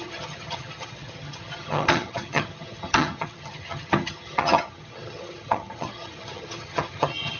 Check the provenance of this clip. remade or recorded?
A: remade